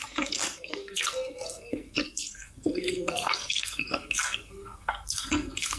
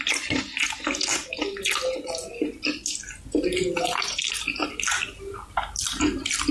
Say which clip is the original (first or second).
second